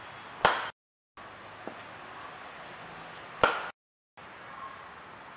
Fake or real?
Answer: real